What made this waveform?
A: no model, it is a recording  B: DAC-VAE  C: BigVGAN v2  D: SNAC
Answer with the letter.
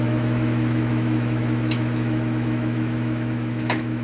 B